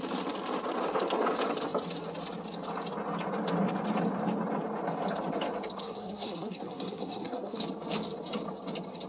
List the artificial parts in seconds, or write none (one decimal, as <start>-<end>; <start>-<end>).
5.8-7.6